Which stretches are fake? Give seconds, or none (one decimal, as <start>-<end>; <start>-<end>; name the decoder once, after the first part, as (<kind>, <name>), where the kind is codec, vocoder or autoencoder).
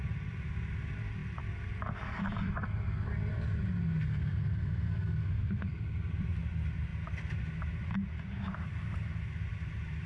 4.0-5.7 (codec, SNAC)